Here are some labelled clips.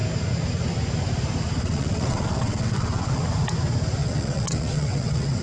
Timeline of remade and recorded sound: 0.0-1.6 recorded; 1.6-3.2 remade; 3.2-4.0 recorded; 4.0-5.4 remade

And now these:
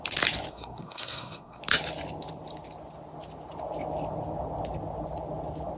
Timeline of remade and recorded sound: 0.0-0.5 recorded; 0.5-1.6 remade; 1.6-5.8 recorded

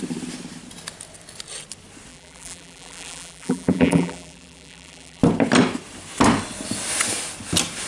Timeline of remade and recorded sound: 0.0-2.1 recorded; 2.1-5.2 remade; 5.2-7.9 recorded

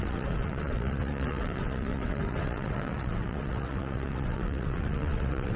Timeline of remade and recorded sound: 0.0-5.6 remade

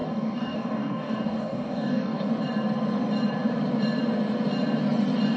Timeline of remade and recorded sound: 0.0-2.3 remade; 2.3-5.4 recorded

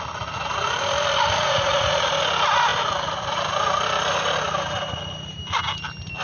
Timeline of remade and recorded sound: 0.0-1.4 recorded; 1.4-2.1 remade; 2.1-6.2 recorded

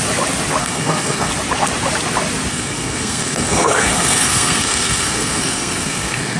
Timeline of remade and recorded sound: 0.0-0.6 recorded; 0.6-1.3 remade; 1.3-2.5 recorded; 2.5-6.4 remade